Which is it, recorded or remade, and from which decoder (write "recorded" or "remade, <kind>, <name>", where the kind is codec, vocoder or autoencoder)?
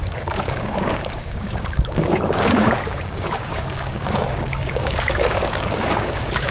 remade, codec, DAC